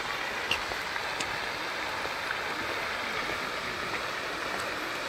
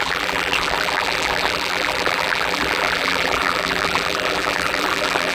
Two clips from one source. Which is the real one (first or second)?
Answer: first